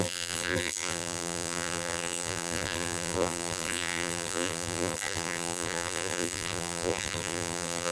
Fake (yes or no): yes